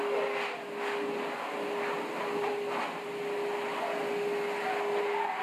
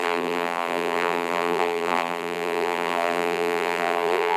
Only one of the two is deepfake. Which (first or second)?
second